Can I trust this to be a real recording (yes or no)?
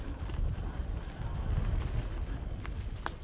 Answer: yes